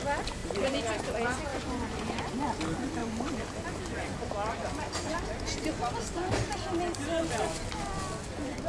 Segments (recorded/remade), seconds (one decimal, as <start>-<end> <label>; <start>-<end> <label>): 0.0-0.4 recorded; 0.4-1.0 remade; 1.0-1.5 recorded; 1.5-2.4 remade; 2.4-8.7 recorded

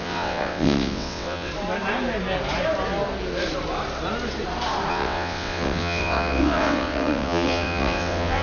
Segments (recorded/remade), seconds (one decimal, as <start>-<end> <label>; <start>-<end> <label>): 0.0-1.5 remade; 1.5-4.9 recorded; 4.9-8.4 remade

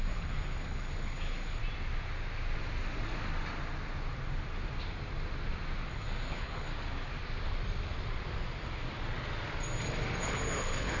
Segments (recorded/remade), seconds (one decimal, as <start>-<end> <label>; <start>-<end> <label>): 0.0-1.6 remade; 1.6-5.9 recorded; 5.9-6.7 remade; 6.7-10.2 recorded; 10.2-11.0 remade